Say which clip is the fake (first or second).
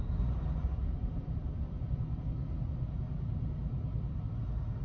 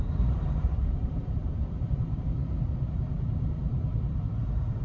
second